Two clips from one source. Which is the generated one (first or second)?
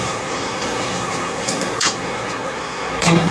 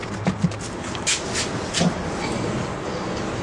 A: first